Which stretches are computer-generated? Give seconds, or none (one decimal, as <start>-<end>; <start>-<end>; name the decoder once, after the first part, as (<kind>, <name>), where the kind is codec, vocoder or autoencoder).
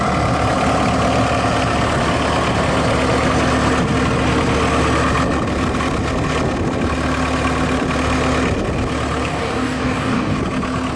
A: 9.3-10.4 (codec, DAC)